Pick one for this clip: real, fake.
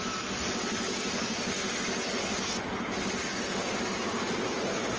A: real